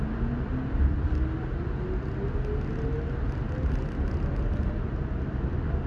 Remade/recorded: recorded